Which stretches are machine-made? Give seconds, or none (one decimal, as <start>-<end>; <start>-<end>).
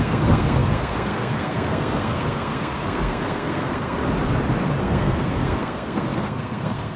0.0-4.0; 4.8-7.0